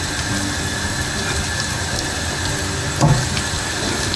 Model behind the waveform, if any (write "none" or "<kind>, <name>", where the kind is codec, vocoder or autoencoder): none